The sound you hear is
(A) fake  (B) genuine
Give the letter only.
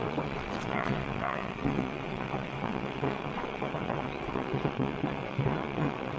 A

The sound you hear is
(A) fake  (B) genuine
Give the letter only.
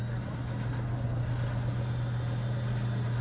B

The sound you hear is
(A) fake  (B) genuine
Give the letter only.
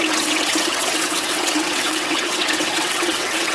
A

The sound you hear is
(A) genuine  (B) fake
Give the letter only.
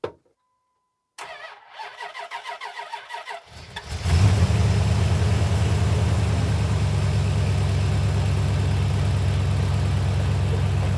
A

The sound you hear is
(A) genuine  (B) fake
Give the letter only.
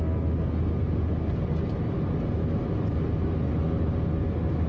A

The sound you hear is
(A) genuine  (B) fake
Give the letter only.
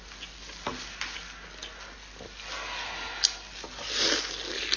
A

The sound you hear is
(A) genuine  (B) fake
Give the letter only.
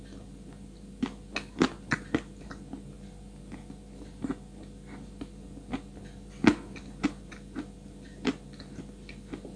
A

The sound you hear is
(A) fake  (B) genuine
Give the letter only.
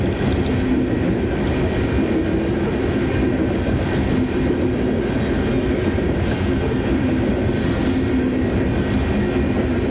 B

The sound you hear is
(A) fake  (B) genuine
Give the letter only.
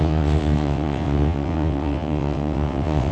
A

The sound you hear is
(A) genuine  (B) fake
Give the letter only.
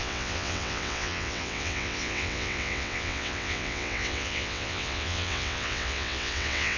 B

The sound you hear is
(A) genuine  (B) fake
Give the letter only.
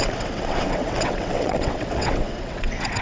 B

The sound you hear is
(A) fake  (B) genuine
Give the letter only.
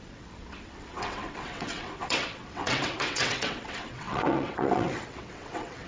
A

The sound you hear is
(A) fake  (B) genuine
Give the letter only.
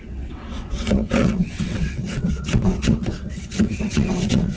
A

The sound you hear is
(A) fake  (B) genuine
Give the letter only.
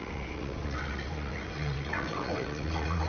A